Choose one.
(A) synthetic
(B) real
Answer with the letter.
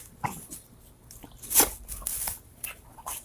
B